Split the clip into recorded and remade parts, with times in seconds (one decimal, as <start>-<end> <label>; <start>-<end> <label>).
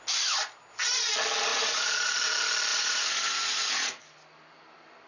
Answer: 0.0-1.5 recorded; 1.5-2.2 remade; 2.2-2.7 recorded; 2.7-4.0 remade; 4.0-5.1 recorded